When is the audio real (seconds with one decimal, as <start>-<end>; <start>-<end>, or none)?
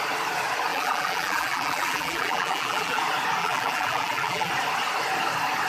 0.0-0.7; 3.0-3.4; 4.5-5.7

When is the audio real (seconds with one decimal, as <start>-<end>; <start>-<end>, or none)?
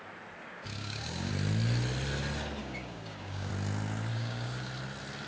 0.0-0.4; 1.3-2.6; 3.5-4.1; 4.7-5.3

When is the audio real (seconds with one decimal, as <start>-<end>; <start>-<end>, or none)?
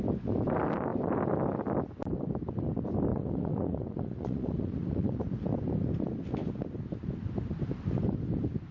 0.0-3.1; 5.2-8.7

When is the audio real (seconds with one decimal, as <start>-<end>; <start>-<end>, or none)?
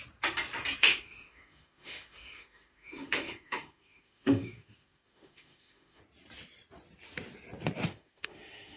0.0-0.8; 6.0-7.9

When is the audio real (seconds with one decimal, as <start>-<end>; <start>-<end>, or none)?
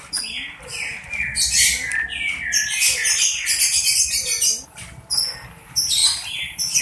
0.0-6.8